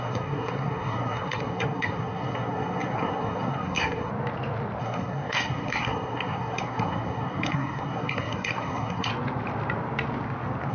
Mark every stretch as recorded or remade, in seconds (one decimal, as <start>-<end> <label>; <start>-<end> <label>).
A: 0.0-4.1 remade; 4.1-4.8 recorded; 4.8-9.1 remade; 9.1-10.7 recorded